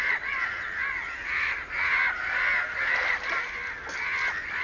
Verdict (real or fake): real